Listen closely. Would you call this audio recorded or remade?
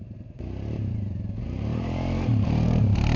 remade